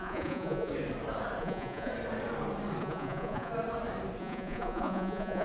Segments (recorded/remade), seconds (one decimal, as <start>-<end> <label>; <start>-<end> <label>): 0.0-0.7 remade; 0.7-1.4 recorded; 1.4-1.9 remade; 1.9-2.8 recorded; 2.8-3.5 remade; 3.5-4.2 recorded; 4.2-5.4 remade